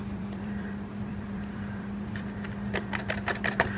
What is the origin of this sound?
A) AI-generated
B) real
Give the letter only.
A